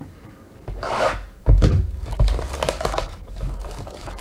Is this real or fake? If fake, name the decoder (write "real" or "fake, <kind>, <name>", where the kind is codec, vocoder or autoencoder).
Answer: fake, codec, DAC